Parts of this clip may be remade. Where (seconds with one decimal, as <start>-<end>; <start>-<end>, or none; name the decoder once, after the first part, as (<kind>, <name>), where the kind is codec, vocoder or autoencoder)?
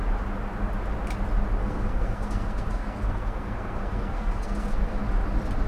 1.6-5.0 (codec, SNAC)